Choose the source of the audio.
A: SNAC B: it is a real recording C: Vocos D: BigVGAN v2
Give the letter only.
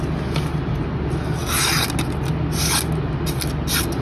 B